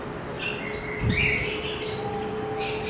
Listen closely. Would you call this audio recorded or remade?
recorded